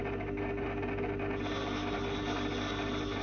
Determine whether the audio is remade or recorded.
recorded